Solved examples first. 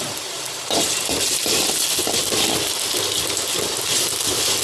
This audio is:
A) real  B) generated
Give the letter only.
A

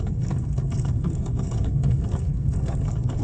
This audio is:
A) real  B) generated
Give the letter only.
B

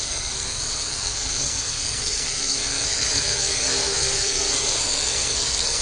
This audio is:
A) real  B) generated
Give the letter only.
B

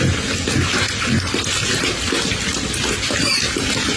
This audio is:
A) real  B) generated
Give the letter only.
A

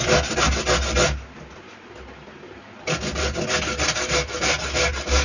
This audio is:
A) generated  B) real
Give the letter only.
B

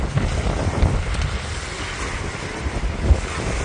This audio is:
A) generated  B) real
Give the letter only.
B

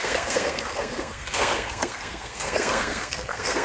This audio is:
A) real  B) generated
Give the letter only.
B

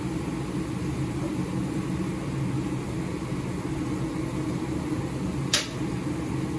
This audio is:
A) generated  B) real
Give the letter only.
B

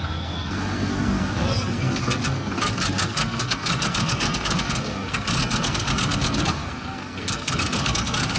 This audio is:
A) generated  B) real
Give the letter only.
A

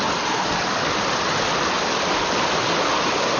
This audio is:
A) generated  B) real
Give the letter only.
B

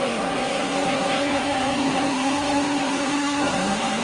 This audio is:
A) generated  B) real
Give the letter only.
A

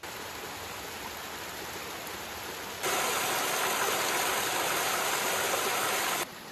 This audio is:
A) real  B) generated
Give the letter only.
A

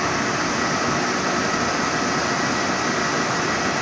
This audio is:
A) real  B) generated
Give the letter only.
A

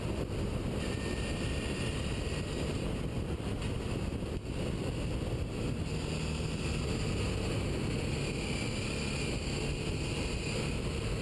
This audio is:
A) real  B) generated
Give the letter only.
A